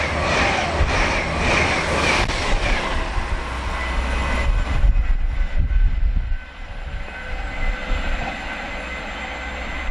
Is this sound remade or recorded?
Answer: recorded